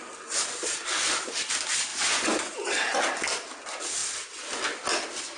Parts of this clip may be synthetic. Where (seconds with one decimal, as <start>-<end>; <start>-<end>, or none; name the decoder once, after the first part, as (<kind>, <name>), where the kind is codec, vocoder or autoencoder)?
1.9-2.4 (vocoder, Vocos)